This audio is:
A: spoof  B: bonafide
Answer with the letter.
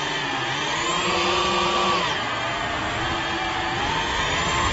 B